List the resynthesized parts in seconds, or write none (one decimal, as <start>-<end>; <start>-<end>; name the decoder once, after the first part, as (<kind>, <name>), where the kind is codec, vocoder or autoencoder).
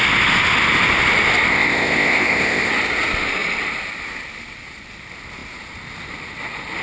1.5-2.7 (codec, ZipCodec)